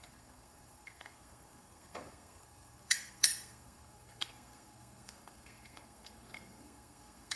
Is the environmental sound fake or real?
fake